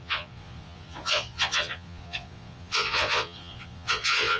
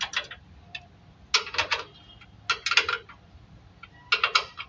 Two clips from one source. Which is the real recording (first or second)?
second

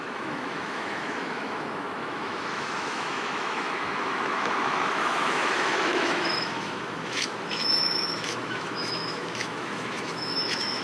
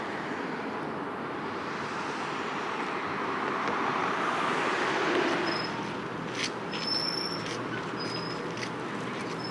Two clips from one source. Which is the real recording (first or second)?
second